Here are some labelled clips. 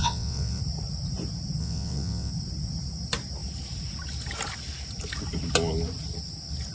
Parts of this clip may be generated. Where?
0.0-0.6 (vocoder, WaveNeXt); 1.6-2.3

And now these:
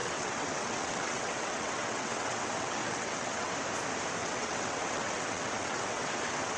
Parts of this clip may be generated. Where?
0.0-3.5 (vocoder, WaveNeXt); 4.2-6.6